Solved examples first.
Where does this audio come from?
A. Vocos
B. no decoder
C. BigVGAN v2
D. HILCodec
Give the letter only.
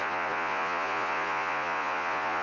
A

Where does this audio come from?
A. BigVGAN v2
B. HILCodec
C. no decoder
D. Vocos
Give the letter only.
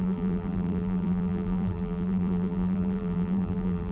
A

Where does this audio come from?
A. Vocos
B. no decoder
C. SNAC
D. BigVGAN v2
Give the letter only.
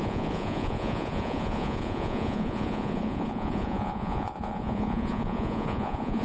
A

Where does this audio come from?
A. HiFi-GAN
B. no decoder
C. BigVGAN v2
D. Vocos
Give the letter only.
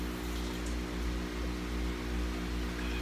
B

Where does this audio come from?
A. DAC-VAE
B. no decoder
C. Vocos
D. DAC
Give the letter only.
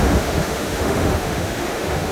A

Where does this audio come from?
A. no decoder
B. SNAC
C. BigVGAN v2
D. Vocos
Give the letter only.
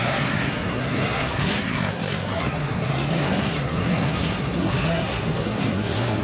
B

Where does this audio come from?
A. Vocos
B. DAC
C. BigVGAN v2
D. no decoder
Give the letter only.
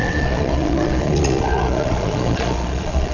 A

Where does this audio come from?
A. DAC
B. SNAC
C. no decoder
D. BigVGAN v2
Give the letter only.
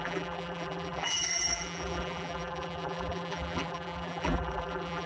D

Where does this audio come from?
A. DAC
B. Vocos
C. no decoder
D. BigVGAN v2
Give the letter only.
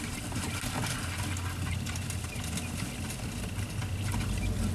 C